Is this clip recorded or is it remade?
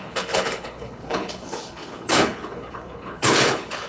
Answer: remade